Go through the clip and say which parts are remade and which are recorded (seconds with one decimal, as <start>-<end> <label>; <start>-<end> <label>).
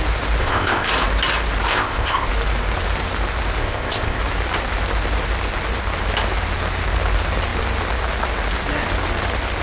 0.0-0.4 recorded; 0.4-0.9 remade; 0.9-1.7 recorded; 1.7-2.3 remade; 2.3-3.6 recorded; 3.6-4.2 remade; 4.2-9.6 recorded